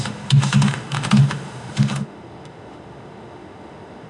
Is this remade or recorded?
remade